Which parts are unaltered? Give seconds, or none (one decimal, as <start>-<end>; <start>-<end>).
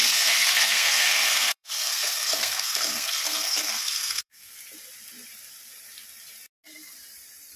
4.6-7.6